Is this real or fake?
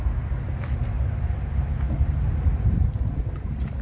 real